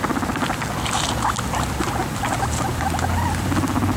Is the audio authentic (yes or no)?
yes